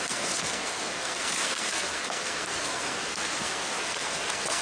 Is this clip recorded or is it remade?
remade